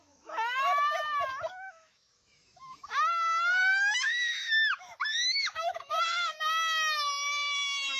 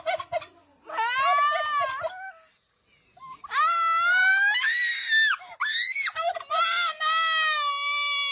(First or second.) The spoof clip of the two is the first